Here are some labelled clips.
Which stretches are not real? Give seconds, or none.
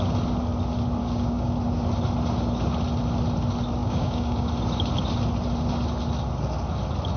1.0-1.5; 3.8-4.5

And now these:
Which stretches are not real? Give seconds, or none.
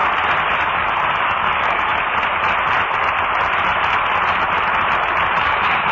1.2-1.9; 5.4-5.9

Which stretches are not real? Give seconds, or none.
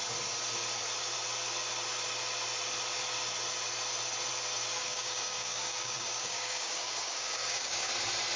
4.8-7.9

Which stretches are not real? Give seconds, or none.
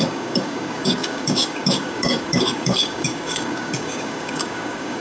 0.0-5.0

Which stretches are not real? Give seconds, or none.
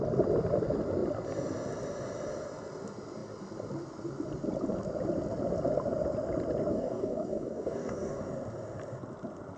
6.7-8.2